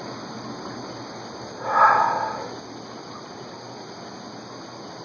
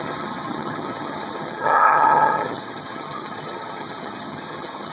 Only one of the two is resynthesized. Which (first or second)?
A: second